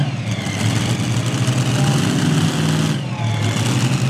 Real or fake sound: real